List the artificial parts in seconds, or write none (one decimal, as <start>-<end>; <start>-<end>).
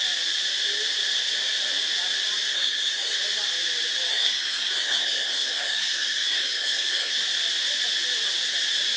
2.5-3.2; 4.1-7.1